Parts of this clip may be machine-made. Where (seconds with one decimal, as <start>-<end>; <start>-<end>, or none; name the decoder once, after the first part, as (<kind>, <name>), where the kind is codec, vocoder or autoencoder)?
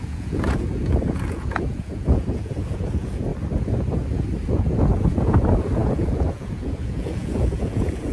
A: 0.0-3.3 (vocoder, Vocos); 4.5-8.1